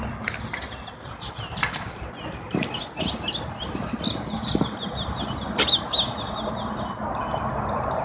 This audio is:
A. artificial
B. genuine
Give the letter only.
B